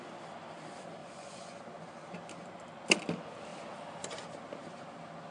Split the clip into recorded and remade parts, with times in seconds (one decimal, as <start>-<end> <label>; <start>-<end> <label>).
0.0-1.0 recorded; 1.0-1.6 remade; 1.6-5.3 recorded